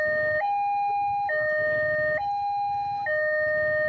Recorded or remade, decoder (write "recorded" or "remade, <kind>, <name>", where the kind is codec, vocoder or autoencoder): recorded